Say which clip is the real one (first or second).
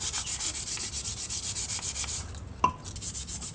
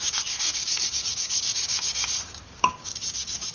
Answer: first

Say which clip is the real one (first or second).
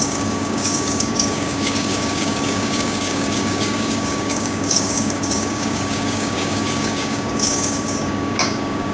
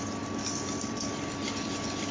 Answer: second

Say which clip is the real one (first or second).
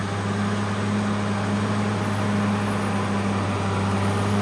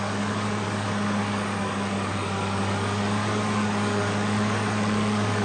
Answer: first